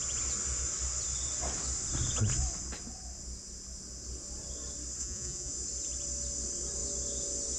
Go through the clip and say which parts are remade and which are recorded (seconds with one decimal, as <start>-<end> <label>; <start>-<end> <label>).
0.0-5.0 recorded; 5.0-5.5 remade; 5.5-7.6 recorded